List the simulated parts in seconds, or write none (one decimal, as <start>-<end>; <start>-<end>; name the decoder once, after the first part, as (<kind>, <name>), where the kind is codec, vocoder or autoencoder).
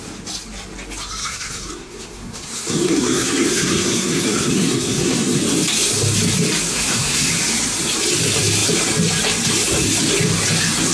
1.2-5.4 (codec, SNAC); 6.7-7.3